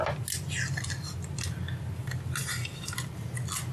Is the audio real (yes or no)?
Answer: yes